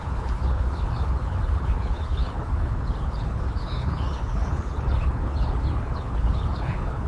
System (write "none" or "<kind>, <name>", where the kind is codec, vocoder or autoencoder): codec, HILCodec